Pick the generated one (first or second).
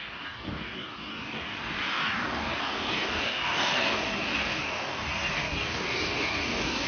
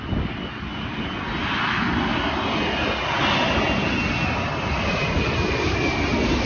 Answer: first